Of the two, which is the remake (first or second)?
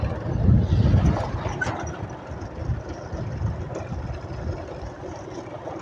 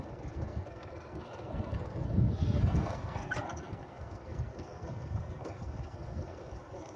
second